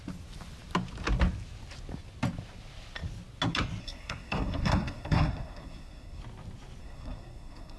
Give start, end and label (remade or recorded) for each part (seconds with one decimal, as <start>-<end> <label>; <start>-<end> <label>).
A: 0.0-3.8 recorded; 3.8-6.2 remade; 6.2-6.8 recorded; 6.8-7.8 remade